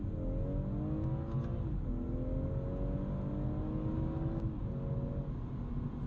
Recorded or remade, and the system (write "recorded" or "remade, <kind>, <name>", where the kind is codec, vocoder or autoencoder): recorded